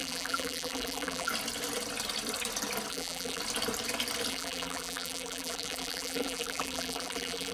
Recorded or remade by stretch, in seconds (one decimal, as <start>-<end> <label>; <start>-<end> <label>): 0.0-1.3 remade; 1.3-2.9 recorded; 2.9-3.4 remade; 3.4-4.3 recorded; 4.3-7.5 remade